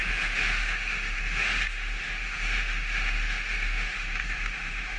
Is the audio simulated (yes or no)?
yes